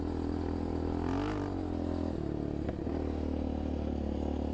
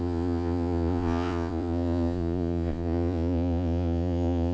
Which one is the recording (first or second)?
first